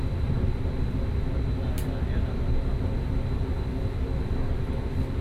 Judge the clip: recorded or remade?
recorded